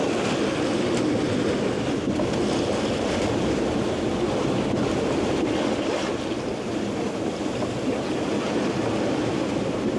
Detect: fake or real real